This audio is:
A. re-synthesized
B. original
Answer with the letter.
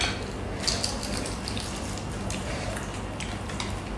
B